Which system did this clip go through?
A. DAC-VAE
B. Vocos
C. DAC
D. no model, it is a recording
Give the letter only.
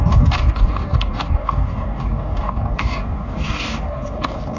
C